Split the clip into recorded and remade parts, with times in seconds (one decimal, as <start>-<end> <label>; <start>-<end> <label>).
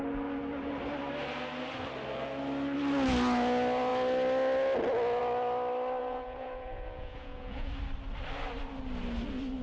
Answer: 0.0-6.0 recorded; 6.0-7.7 remade; 7.7-9.6 recorded